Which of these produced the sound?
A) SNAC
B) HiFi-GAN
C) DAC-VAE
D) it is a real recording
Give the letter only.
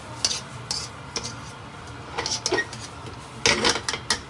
D